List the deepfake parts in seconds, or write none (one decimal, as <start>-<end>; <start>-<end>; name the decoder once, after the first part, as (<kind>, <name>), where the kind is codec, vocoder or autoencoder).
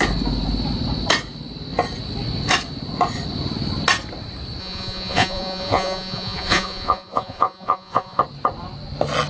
4.6-8.2 (vocoder, Vocos)